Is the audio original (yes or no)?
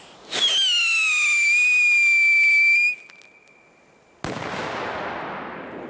yes